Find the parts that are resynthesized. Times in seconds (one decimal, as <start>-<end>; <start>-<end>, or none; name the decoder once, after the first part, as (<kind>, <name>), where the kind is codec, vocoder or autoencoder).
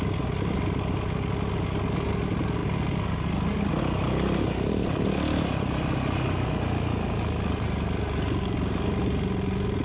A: none